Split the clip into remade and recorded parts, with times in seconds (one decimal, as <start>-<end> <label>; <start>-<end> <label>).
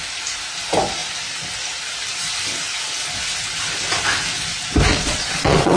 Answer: 0.0-4.9 recorded; 4.9-5.8 remade